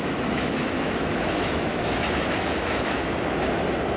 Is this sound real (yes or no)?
no